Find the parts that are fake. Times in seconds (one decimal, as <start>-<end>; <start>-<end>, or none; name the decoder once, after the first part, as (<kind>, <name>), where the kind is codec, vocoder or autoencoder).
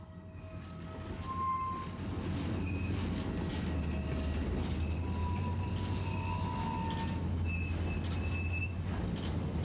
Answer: 5.2-5.7 (vocoder, BigVGAN v2)